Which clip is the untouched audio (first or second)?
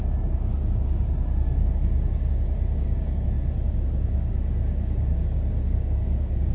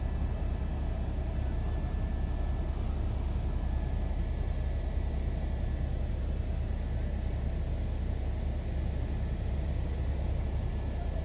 second